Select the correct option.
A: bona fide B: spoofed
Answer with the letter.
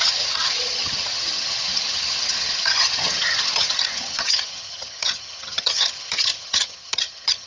B